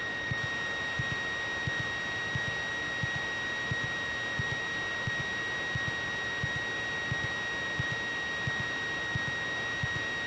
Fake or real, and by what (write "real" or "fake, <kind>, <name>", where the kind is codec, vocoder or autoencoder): real